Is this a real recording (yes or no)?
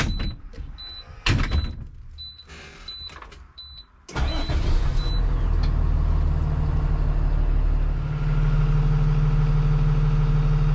yes